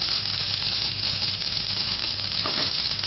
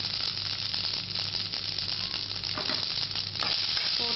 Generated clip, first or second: first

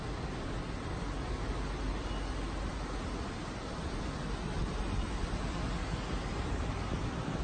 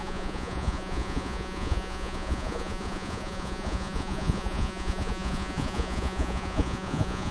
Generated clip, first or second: second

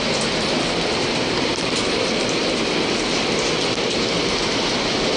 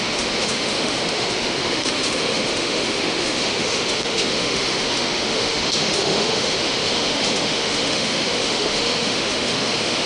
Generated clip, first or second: second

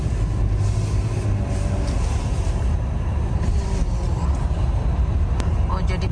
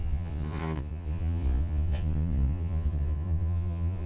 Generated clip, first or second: second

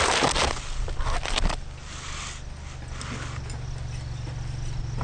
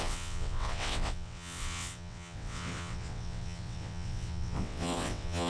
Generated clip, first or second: second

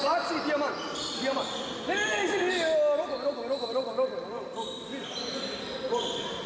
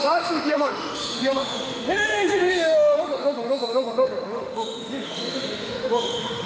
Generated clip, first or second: second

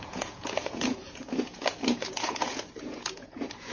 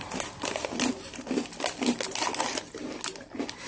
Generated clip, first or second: first